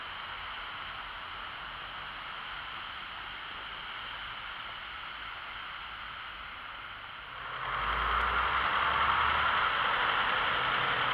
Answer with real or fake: real